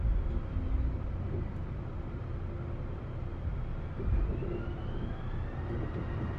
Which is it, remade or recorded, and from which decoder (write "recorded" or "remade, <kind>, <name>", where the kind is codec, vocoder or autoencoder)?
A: recorded